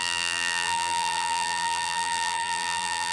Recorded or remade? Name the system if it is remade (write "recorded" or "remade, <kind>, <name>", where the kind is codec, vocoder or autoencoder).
remade, vocoder, BigVGAN v2